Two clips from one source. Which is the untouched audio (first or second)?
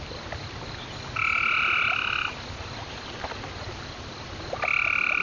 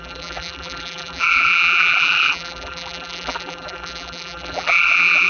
first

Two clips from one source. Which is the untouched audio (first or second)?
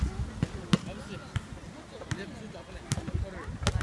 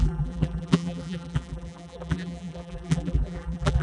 first